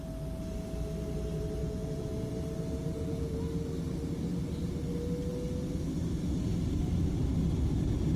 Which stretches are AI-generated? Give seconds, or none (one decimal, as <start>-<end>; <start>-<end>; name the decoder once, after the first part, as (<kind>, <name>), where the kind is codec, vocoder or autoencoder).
1.6-2.3 (vocoder, Vocos); 2.8-3.4